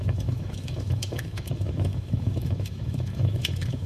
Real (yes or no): no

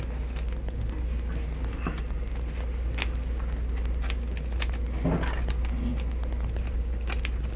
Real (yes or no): yes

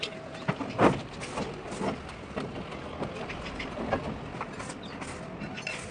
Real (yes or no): yes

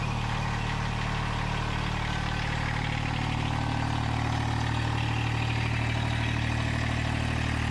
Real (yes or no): yes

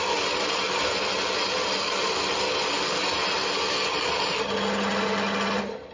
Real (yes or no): yes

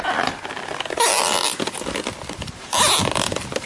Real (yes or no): yes